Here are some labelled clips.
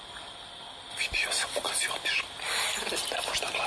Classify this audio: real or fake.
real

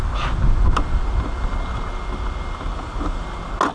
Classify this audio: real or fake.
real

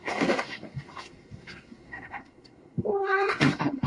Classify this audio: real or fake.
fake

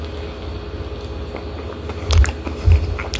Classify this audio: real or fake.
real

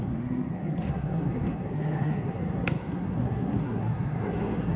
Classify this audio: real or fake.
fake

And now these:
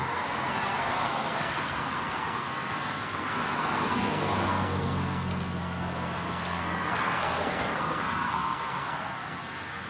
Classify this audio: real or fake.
fake